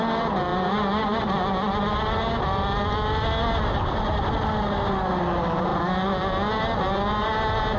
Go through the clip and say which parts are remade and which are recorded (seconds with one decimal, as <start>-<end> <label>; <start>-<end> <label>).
0.0-7.8 recorded